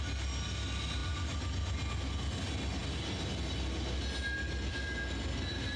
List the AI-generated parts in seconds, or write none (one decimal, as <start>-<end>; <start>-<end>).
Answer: none